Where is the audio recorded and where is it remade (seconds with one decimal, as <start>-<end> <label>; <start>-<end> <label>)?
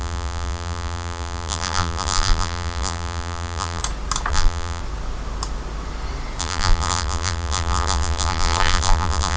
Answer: 0.0-3.8 remade; 3.8-4.3 recorded; 4.3-4.8 remade; 4.8-6.4 recorded; 6.4-9.4 remade